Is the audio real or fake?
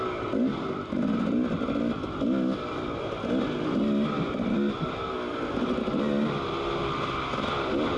real